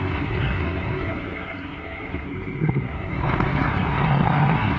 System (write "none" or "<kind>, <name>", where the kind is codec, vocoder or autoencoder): codec, SNAC